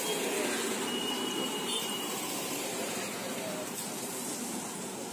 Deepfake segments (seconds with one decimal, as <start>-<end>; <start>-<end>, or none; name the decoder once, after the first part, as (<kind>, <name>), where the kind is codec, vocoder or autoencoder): 1.0-4.1 (vocoder, BigVGAN v2)